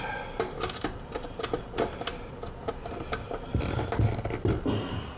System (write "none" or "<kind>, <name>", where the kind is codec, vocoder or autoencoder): none